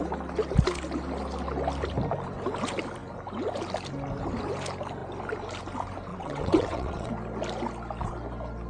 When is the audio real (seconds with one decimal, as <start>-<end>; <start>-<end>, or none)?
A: 0.0-6.1; 7.1-8.7